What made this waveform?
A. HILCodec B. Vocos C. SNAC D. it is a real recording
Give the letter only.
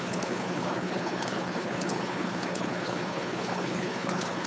A